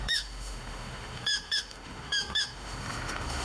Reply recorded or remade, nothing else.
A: remade